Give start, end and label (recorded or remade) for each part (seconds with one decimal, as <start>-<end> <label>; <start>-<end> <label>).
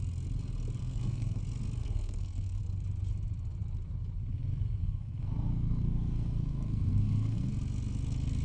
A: 0.0-0.8 recorded; 0.8-1.4 remade; 1.4-1.8 recorded; 1.8-2.6 remade; 2.6-4.8 recorded; 4.8-7.5 remade; 7.5-8.4 recorded